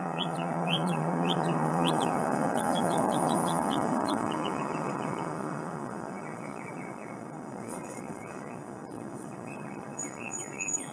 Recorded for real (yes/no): no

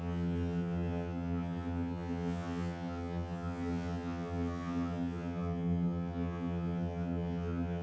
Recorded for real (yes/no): no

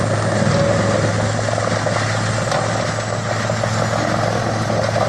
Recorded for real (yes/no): yes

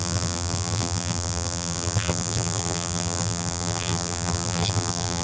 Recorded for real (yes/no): no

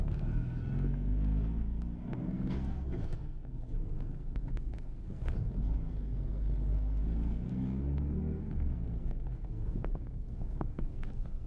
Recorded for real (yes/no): no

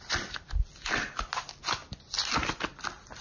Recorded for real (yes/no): yes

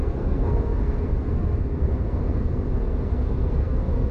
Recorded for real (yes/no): no